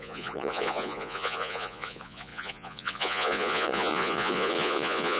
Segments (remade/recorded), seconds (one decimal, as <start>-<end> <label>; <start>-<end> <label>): 0.0-5.2 remade